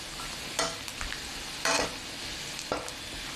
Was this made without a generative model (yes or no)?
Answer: yes